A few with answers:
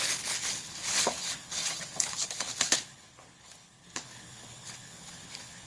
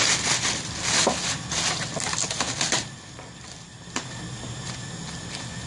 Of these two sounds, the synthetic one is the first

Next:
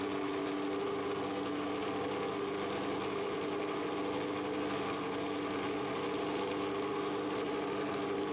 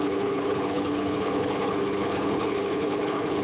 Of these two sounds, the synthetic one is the second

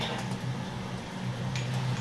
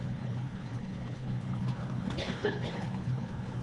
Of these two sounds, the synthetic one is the second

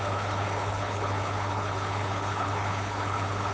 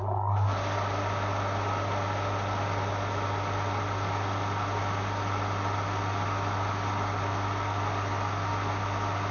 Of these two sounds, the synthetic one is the first